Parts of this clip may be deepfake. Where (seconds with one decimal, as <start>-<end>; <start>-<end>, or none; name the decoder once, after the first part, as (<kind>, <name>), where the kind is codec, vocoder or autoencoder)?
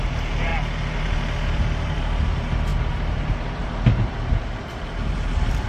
0.0-0.5 (vocoder, BigVGAN v2); 1.0-5.7